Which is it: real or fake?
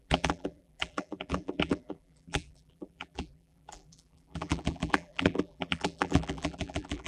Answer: fake